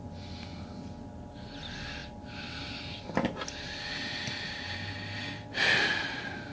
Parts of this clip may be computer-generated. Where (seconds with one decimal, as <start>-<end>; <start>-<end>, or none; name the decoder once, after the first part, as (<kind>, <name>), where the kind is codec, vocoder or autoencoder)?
2.0-2.7 (vocoder, BigVGAN v2)